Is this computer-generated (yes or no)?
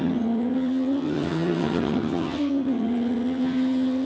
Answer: yes